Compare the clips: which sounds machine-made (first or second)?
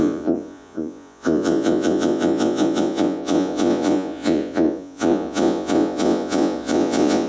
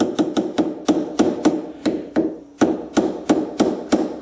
first